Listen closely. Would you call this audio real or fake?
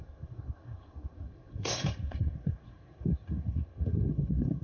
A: fake